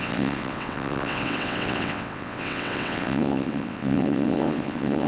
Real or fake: fake